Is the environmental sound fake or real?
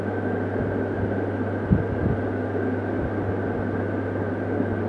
real